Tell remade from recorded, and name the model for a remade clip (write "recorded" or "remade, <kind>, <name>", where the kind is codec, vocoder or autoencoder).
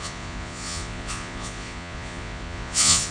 remade, vocoder, Vocos